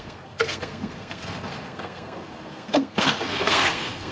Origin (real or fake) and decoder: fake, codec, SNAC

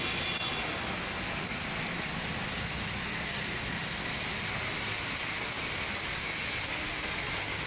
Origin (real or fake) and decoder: real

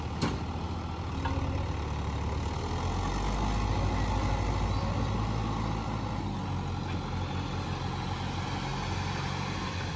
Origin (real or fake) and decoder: real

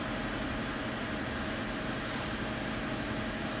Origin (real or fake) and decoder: real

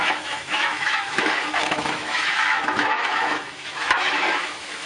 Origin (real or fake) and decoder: fake, autoencoder, DAC-VAE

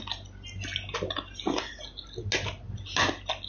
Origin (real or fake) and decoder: real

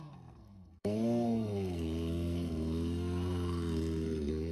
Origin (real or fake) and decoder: fake, codec, SNAC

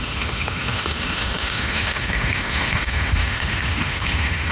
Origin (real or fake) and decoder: fake, autoencoder, DAC-VAE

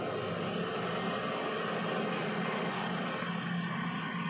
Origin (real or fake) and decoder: real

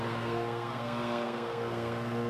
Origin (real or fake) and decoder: fake, codec, SNAC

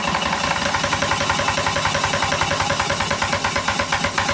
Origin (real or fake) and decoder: real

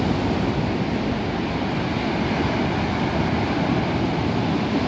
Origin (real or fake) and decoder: real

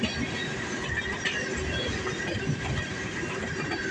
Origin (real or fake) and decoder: real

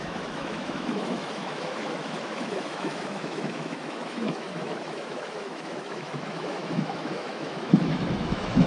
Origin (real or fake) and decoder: fake, autoencoder, DAC-VAE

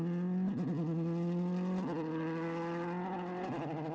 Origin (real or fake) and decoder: real